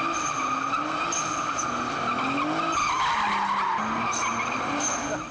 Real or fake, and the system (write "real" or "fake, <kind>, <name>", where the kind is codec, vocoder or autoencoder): real